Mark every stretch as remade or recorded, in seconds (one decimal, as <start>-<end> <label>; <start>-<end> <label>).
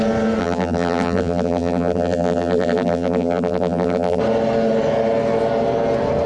0.0-0.4 recorded; 0.4-4.2 remade; 4.2-6.3 recorded